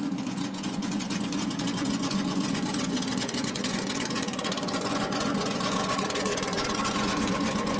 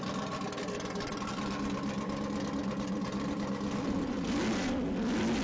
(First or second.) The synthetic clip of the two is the first